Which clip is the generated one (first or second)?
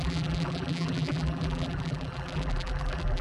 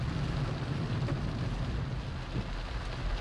first